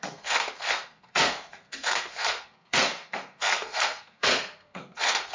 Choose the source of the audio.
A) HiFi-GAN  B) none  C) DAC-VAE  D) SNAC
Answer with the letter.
D